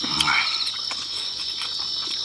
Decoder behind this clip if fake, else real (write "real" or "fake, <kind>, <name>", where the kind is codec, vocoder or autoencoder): fake, vocoder, Vocos